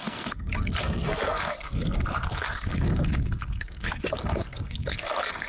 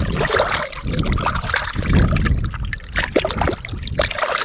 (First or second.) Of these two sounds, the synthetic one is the first